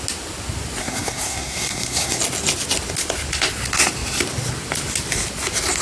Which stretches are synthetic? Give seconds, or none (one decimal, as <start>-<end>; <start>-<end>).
0.8-2.2